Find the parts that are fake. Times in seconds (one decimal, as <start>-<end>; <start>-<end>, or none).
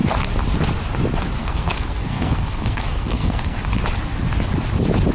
1.4-3.6